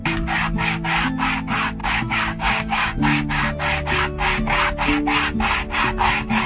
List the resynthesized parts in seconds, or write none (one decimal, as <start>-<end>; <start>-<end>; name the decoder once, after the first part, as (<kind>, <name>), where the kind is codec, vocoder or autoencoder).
1.8-3.4 (codec, DAC)